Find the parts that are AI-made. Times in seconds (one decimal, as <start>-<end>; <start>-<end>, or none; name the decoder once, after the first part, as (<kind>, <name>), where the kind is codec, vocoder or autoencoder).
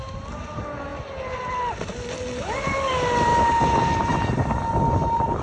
none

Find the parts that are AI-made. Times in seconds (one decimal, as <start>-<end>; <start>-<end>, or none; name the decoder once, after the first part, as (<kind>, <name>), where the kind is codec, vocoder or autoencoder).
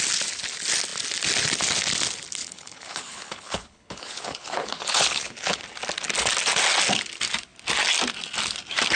2.4-5.6 (codec, HILCodec)